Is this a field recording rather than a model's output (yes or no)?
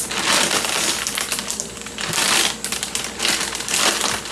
yes